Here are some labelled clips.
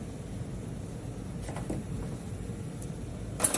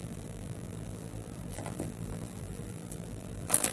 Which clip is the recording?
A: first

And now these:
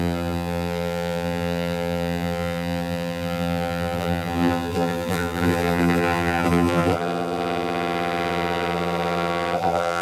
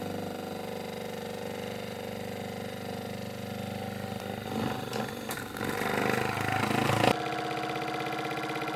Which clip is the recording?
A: second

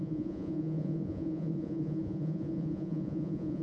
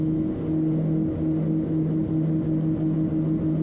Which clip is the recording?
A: second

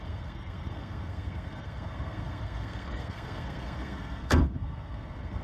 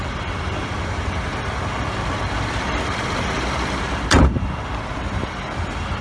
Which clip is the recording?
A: second